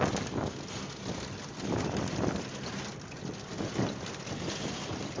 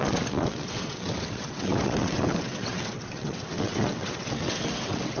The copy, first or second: second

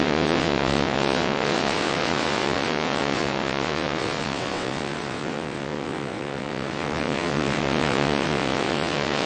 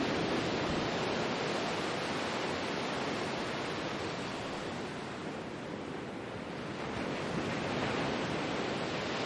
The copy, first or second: first